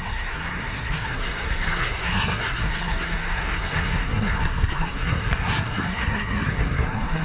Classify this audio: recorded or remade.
remade